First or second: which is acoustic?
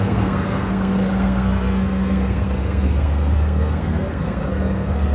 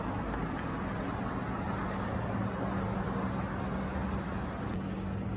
second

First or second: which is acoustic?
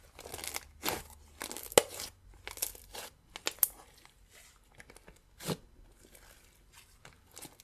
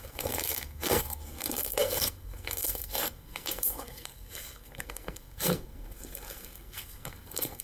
first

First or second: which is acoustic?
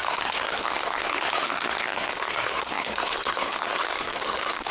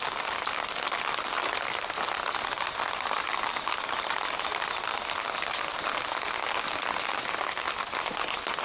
second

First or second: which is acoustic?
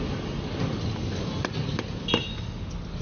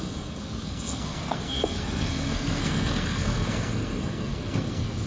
first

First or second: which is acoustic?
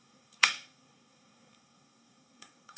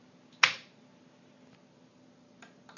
second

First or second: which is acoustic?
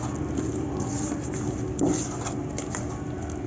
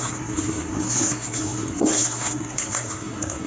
first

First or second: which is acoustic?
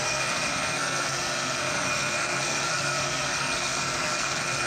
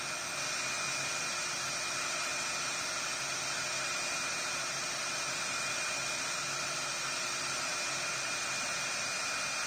second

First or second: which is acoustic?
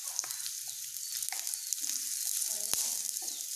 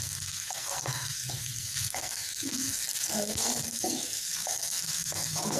first